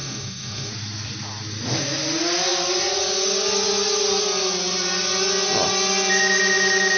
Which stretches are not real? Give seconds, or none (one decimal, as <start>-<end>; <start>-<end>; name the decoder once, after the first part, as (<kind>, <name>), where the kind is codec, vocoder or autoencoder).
0.0-0.7 (autoencoder, DAC-VAE)